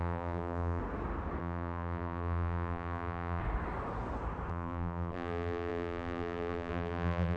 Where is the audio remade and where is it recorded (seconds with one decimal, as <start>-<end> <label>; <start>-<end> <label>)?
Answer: 0.0-0.8 remade; 0.8-1.4 recorded; 1.4-3.4 remade; 3.4-4.5 recorded; 4.5-7.4 remade